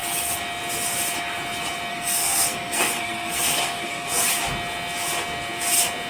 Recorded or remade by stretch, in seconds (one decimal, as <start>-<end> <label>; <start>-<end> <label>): 0.0-1.9 recorded; 1.9-4.1 remade; 4.1-6.1 recorded